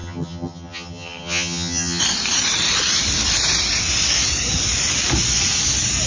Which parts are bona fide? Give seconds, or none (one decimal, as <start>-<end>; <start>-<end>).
2.0-6.1